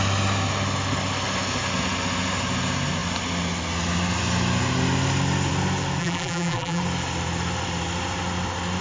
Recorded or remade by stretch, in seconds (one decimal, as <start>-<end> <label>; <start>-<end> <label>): 0.0-6.0 recorded; 6.0-6.8 remade; 6.8-8.8 recorded